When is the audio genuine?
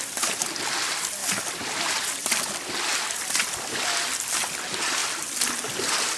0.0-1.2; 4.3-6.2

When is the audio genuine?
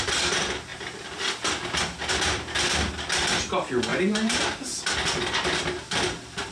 0.0-3.9; 4.8-6.5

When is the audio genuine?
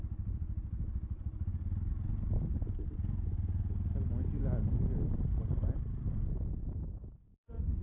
0.0-7.8